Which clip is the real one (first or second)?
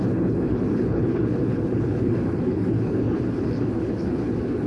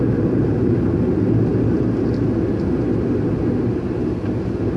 second